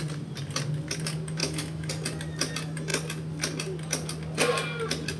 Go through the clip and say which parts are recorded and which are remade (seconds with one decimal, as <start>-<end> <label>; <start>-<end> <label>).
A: 0.0-1.4 recorded; 1.4-1.9 remade; 1.9-5.2 recorded